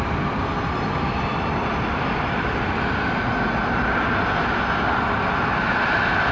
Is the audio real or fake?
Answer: real